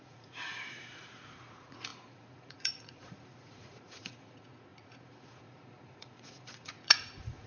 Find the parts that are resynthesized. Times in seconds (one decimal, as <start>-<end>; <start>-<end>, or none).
0.0-7.5